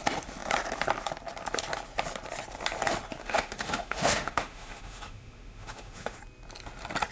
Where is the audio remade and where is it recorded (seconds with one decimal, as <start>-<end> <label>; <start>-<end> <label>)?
0.0-3.2 recorded; 3.2-6.2 remade; 6.2-7.1 recorded